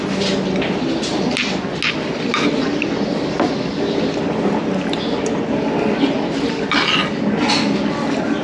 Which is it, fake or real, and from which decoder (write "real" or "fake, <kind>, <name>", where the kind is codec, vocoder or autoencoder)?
real